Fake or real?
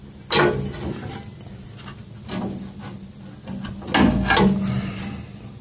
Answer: real